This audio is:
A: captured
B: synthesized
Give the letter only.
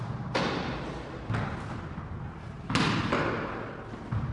A